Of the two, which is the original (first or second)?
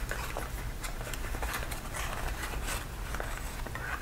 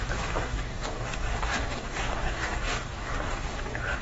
first